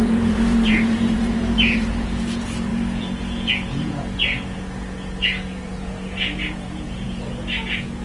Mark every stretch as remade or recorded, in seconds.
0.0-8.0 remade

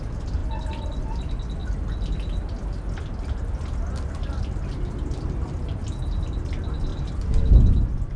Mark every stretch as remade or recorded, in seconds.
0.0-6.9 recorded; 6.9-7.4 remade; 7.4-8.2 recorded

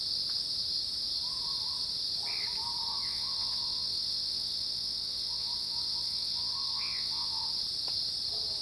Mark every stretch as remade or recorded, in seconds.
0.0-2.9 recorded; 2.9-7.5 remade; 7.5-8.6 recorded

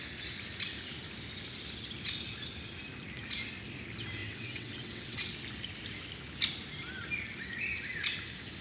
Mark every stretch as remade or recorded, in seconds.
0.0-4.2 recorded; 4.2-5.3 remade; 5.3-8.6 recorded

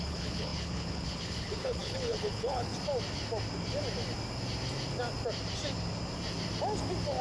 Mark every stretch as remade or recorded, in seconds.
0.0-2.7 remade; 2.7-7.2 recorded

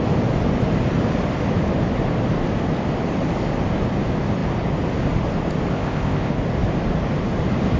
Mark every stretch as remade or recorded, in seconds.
0.0-5.7 recorded; 5.7-6.3 remade; 6.3-7.8 recorded

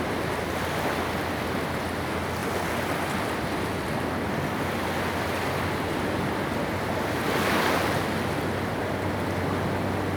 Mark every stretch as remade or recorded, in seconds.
0.0-2.4 recorded; 2.4-4.0 remade; 4.0-10.2 recorded

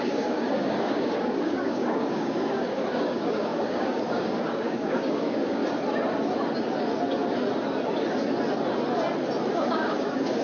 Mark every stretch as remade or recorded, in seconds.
0.0-5.6 remade; 5.6-9.5 recorded; 9.5-10.4 remade